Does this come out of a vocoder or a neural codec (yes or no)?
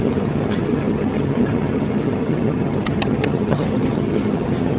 yes